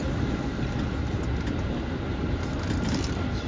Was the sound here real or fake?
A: real